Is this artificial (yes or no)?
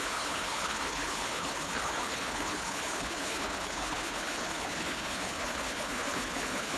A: yes